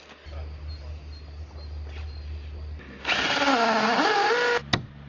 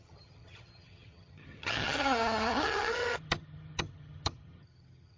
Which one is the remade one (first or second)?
second